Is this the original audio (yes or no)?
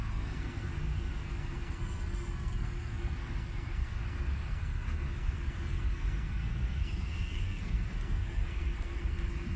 no